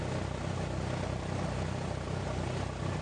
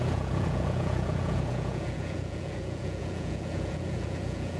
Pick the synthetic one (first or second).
second